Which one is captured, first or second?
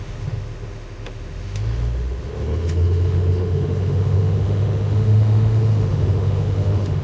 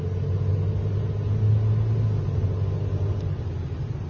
second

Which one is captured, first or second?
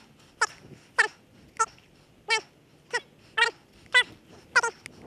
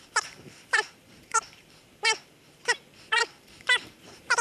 first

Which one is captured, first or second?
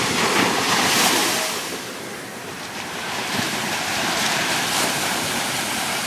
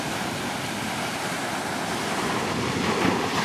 second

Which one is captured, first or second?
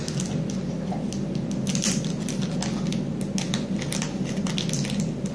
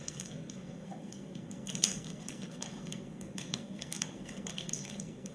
first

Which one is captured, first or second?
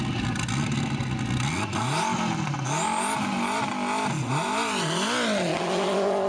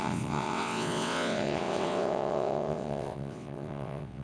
first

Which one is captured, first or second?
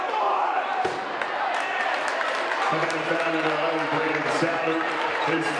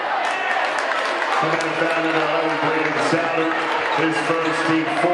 second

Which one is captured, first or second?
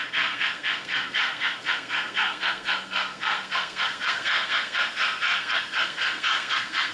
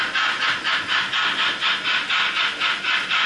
second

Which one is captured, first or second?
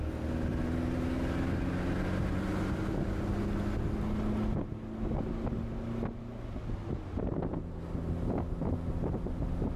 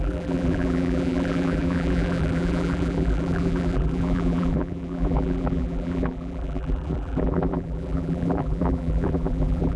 first